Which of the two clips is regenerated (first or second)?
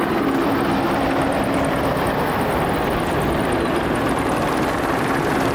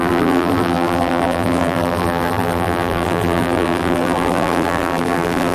second